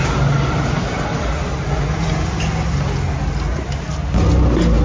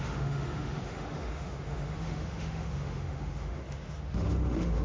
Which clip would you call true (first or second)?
first